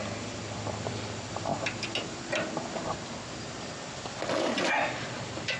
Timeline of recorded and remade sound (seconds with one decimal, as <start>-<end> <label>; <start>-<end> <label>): 0.0-1.5 remade; 1.5-4.9 recorded; 4.9-5.6 remade